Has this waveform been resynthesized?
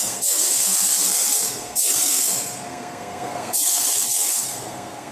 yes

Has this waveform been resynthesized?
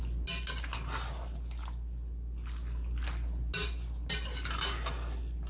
no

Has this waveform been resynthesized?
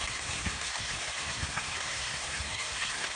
yes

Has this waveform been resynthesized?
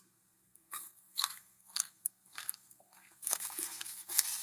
yes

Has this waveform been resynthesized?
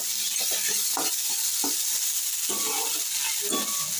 no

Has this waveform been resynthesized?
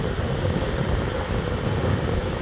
no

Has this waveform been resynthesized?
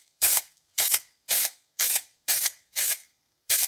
yes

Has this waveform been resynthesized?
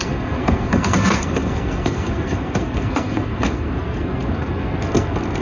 yes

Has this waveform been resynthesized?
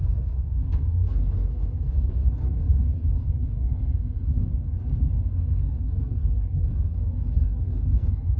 yes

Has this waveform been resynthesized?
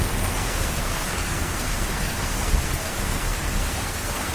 yes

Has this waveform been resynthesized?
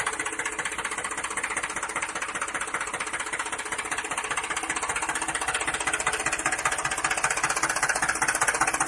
no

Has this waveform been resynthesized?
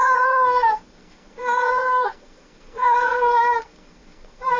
yes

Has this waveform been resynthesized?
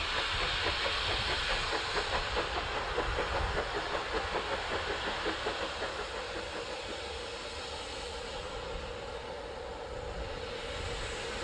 no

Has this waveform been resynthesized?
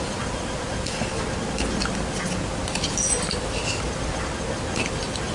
no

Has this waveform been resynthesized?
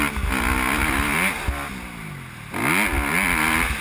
no